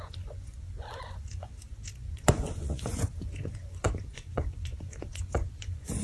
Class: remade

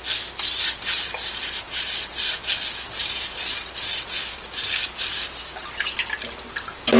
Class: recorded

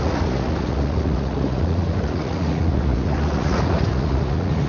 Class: remade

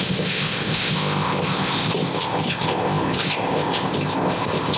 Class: remade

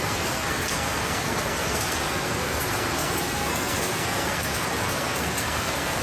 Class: remade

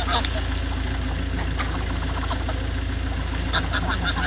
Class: recorded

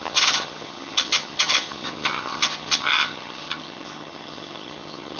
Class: remade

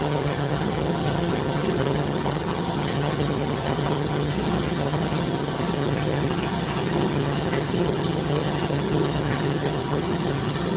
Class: remade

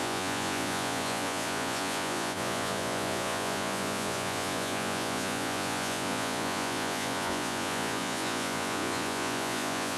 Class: remade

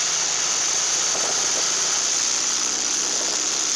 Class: remade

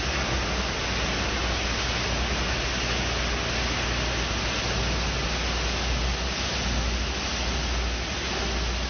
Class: recorded